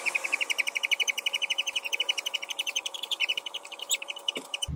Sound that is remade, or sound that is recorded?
remade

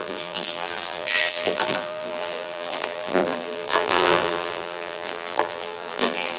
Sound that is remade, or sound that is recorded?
remade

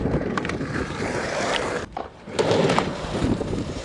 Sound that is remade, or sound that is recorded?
remade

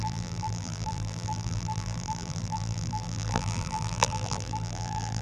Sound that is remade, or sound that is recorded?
remade